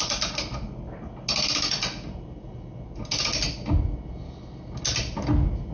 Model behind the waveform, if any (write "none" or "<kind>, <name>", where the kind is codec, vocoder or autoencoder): none